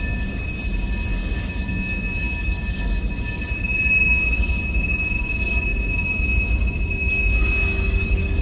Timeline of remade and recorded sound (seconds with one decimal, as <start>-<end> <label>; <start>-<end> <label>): 0.0-1.2 recorded; 1.2-3.0 remade; 3.0-7.2 recorded; 7.2-8.4 remade